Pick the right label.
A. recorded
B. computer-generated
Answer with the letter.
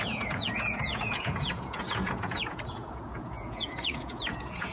B